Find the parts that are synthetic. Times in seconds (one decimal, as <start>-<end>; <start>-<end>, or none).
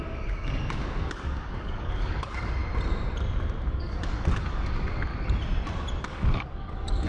0.0-2.6; 3.7-5.1; 6.0-7.1